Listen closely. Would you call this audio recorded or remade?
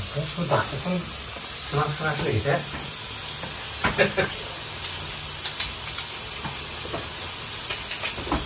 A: recorded